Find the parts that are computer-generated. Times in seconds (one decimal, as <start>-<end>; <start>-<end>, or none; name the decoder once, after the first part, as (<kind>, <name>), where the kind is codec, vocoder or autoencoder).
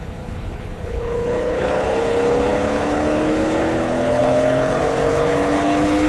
0.0-6.1 (codec, HILCodec)